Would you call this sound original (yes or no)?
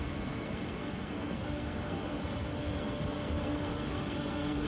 no